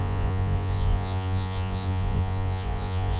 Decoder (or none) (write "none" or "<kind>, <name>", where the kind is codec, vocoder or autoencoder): vocoder, Vocos